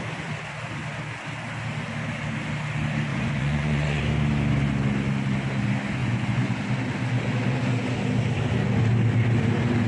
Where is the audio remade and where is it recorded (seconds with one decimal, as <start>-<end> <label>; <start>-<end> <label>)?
0.0-3.1 recorded; 3.1-4.0 remade; 4.0-6.0 recorded; 6.0-6.6 remade; 6.6-9.9 recorded